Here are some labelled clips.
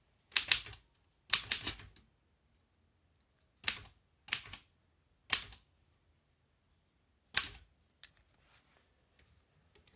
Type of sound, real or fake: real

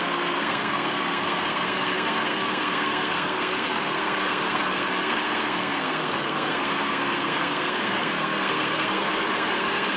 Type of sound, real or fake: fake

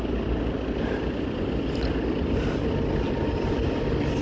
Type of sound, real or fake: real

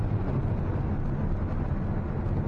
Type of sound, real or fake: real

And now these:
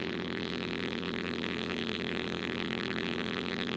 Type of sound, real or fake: fake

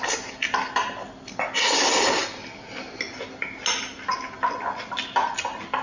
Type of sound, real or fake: real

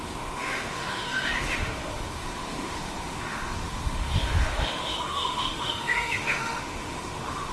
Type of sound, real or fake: fake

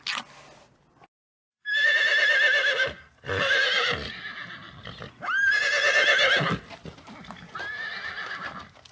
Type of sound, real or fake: real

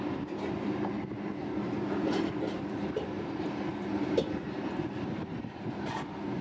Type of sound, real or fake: real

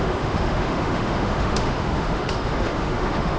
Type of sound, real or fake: fake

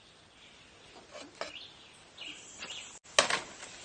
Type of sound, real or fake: real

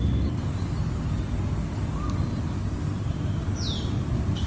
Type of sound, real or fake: real